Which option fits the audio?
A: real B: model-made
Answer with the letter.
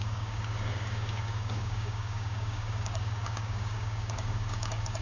B